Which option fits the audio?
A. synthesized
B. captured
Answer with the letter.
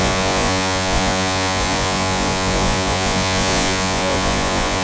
A